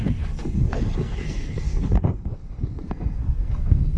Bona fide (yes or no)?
no